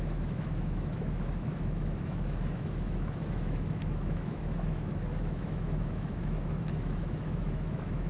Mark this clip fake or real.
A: fake